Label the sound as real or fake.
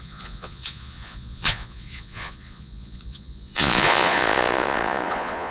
fake